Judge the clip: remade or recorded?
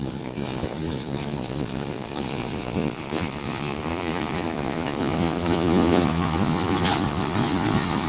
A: remade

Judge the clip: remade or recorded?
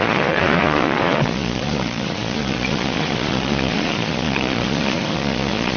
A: remade